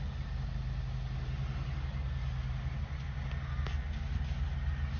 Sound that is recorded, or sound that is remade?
recorded